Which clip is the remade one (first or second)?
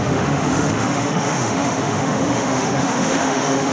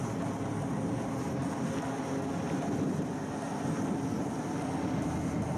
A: first